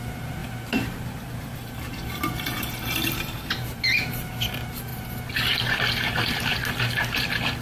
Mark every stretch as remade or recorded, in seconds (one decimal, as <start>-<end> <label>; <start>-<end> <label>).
0.0-0.4 recorded; 0.4-4.5 remade; 4.5-7.6 recorded